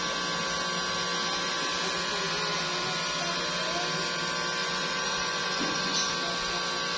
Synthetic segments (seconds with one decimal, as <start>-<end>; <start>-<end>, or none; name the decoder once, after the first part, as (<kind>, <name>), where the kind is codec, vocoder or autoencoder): 4.6-6.1 (vocoder, Vocos)